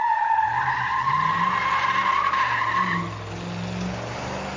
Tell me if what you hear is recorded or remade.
recorded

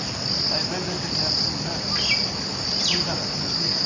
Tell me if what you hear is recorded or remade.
recorded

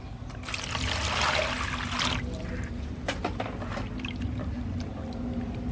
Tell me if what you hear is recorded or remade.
recorded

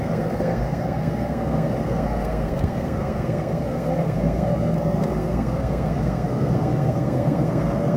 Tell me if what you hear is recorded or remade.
remade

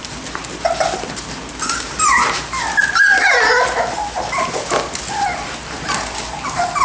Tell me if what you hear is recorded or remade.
recorded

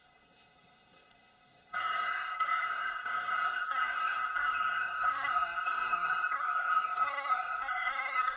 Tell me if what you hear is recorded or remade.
remade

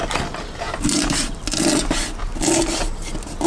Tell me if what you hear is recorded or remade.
recorded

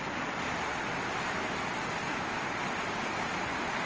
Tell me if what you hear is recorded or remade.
recorded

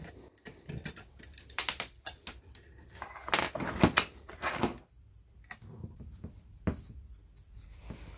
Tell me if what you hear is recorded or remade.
recorded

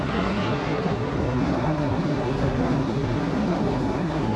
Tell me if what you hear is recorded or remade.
remade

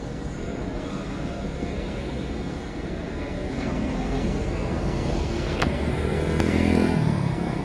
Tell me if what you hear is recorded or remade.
remade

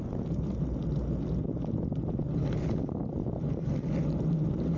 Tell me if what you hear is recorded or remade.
recorded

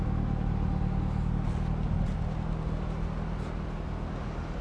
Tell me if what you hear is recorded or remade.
recorded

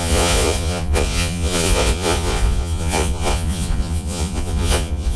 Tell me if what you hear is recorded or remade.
remade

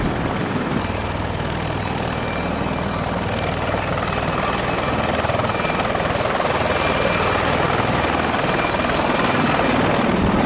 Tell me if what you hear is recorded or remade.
recorded